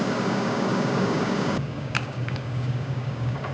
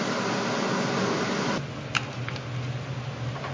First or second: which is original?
second